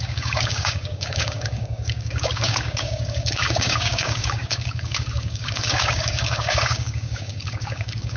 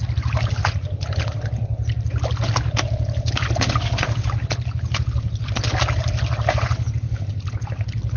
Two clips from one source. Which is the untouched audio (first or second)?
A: second